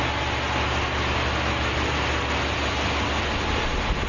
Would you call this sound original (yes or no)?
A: yes